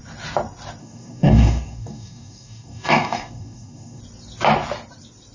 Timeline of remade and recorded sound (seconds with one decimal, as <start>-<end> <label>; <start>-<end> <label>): 0.0-0.8 recorded; 0.8-4.0 remade; 4.0-5.3 recorded